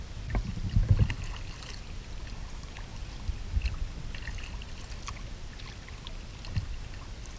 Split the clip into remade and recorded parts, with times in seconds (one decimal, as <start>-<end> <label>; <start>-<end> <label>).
0.0-0.5 remade; 0.5-7.4 recorded